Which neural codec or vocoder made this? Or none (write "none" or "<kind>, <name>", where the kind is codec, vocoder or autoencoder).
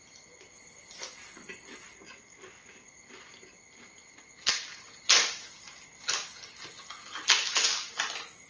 none